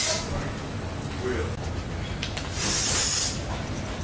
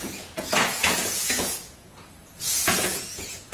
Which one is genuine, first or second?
first